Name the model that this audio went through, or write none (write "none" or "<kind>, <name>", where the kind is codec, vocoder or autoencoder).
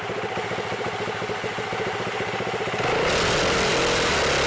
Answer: none